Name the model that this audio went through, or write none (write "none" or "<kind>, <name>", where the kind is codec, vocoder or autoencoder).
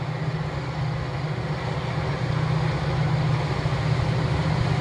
none